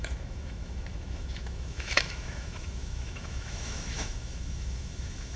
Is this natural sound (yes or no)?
no